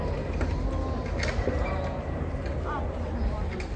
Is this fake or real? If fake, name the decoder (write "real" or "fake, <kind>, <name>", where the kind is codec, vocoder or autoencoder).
real